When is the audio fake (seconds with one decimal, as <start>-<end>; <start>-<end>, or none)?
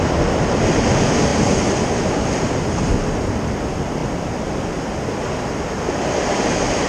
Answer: 1.3-2.8